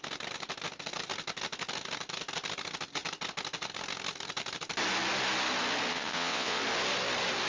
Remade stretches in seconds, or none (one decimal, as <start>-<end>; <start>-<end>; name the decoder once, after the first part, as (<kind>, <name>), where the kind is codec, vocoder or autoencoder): 5.9-6.6 (vocoder, WaveNeXt)